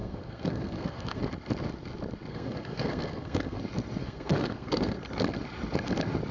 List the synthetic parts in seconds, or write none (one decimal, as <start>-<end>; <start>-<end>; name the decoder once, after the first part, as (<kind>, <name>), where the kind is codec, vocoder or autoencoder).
0.0-1.2 (codec, SNAC); 2.3-3.6; 4.0-5.0